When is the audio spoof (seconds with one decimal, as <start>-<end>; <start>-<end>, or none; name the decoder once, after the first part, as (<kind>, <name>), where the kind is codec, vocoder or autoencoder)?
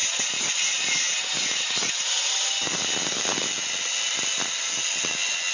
0.0-2.6 (vocoder, BigVGAN v2)